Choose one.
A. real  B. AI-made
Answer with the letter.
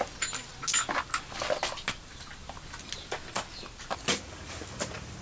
A